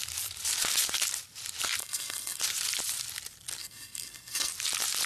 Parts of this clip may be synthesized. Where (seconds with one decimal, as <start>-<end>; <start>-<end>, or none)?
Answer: 1.8-2.4; 3.6-4.5